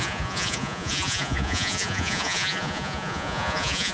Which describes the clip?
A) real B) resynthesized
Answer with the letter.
B